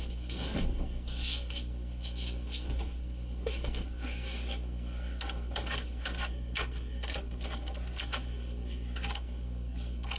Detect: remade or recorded remade